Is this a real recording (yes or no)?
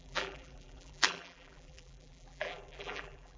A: no